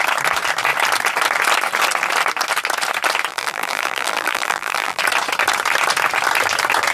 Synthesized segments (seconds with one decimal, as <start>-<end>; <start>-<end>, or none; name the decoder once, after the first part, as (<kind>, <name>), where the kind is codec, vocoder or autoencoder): 3.3-5.0 (vocoder, BigVGAN v2)